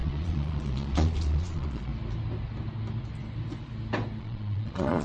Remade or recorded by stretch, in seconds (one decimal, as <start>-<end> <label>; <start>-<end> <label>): 0.0-1.9 remade; 1.9-4.2 recorded; 4.2-5.0 remade